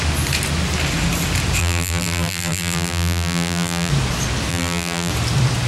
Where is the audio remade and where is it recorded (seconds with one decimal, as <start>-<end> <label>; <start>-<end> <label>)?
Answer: 0.0-1.6 recorded; 1.6-3.9 remade; 3.9-4.5 recorded; 4.5-5.1 remade; 5.1-5.7 recorded